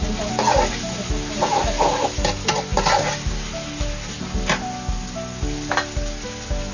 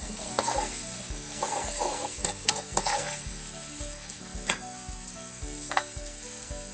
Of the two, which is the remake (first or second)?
second